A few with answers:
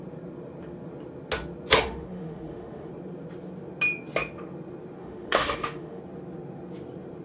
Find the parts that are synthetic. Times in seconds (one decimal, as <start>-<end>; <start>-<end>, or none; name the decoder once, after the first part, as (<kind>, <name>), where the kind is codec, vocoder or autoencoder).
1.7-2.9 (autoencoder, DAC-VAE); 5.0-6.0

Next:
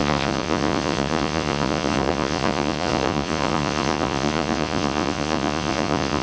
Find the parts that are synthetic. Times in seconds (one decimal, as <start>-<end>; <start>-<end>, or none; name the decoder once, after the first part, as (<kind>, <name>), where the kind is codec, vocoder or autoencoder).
0.0-6.2 (vocoder, Vocos)

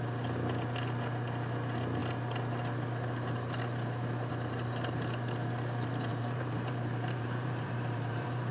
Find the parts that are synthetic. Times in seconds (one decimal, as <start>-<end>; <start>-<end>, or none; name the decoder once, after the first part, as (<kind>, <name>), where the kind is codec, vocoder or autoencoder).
6.1-8.5 (vocoder, BigVGAN v2)

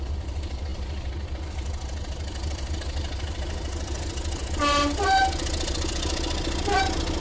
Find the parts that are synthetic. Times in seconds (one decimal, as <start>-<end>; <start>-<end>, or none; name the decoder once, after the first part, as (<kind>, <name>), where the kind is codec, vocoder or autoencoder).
none

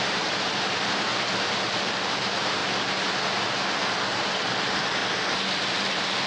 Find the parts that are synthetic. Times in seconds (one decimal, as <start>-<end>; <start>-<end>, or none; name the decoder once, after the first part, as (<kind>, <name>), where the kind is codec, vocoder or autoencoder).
0.0-1.1 (vocoder, BigVGAN v2); 1.7-2.6; 4.5-5.0; 5.6-6.3

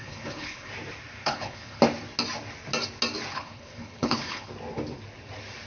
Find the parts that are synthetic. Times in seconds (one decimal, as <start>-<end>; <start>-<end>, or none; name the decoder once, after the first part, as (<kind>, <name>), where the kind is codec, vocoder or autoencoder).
0.0-0.7 (codec, HILCodec); 1.2-1.8; 3.3-4.5

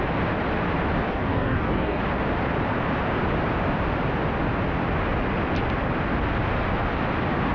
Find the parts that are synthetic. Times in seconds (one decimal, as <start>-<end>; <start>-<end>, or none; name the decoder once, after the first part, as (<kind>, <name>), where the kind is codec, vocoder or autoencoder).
1.1-2.0 (codec, DAC)

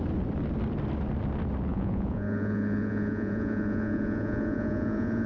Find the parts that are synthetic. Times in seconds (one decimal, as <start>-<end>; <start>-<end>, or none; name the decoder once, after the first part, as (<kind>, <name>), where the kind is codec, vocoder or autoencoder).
1.7-5.3 (vocoder, Vocos)